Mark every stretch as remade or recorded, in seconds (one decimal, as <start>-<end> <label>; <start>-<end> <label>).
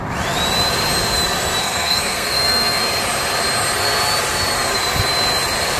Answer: 0.0-1.6 recorded; 1.6-2.8 remade; 2.8-5.8 recorded